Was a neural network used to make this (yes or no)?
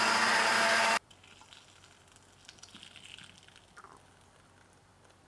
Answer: no